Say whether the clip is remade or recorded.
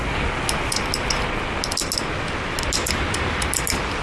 recorded